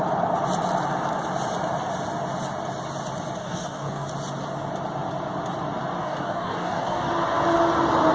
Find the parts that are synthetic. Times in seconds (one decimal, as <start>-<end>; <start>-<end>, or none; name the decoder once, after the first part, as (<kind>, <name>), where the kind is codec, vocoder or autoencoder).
3.4-4.1 (codec, DAC); 6.0-7.1